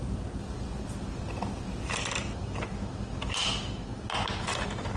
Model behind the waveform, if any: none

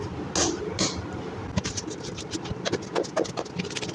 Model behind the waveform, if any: none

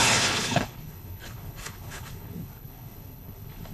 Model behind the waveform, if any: codec, HILCodec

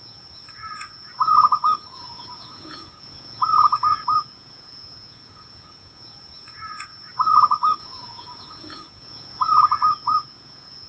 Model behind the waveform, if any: vocoder, Vocos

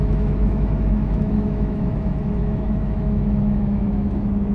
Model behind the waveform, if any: autoencoder, DAC-VAE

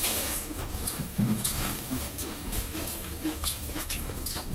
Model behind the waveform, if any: codec, DAC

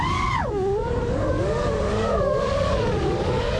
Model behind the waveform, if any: codec, DAC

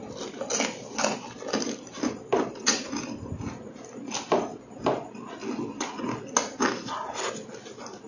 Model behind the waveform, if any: none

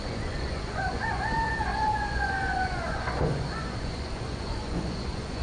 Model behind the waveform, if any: vocoder, Vocos